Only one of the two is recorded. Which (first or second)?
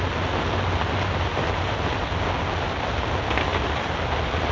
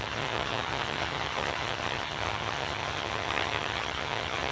first